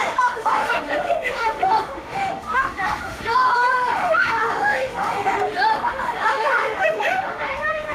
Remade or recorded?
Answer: remade